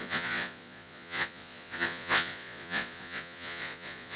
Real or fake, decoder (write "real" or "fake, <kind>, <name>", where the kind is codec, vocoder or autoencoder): fake, vocoder, Vocos